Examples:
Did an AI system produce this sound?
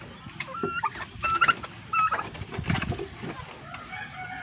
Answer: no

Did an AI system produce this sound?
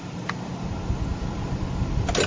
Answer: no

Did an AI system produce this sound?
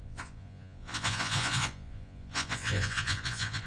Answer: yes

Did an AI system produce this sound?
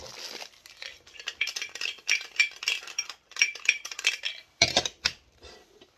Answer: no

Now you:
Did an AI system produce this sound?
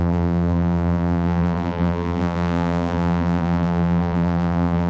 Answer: yes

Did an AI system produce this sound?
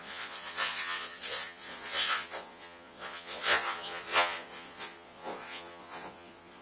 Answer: yes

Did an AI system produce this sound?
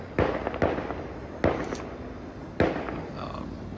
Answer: no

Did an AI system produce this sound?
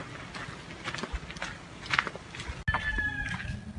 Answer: no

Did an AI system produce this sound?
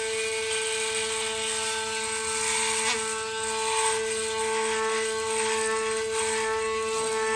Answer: no